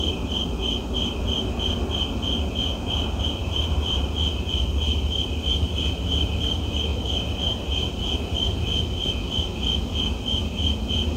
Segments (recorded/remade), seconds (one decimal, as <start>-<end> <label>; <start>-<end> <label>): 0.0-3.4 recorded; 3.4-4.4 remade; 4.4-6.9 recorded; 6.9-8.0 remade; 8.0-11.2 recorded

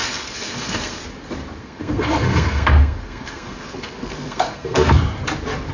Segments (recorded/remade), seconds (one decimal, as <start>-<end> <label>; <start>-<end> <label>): 0.0-1.0 remade; 1.0-1.6 recorded; 1.6-5.0 remade; 5.0-5.7 recorded

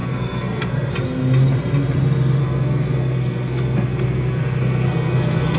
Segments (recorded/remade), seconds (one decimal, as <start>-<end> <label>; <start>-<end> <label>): 0.0-0.9 remade; 0.9-2.4 recorded; 2.4-5.6 remade

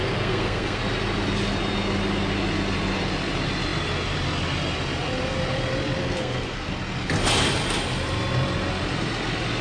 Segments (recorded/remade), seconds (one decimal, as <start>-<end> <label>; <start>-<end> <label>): 0.0-0.8 remade; 0.8-6.0 recorded; 6.0-6.7 remade; 6.7-9.6 recorded

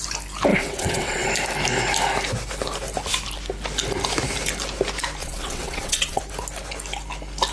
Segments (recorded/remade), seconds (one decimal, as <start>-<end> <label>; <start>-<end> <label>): 0.0-0.5 recorded; 0.5-1.3 remade; 1.3-5.2 recorded; 5.2-6.2 remade; 6.2-7.5 recorded